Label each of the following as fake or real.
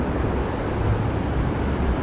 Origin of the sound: real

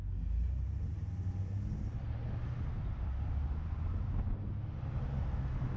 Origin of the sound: real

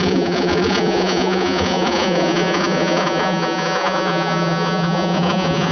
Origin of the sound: fake